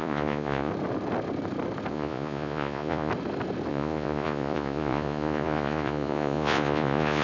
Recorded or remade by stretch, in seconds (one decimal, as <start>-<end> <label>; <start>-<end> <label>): 0.0-0.7 remade; 0.7-1.9 recorded; 1.9-3.1 remade; 3.1-3.7 recorded; 3.7-7.2 remade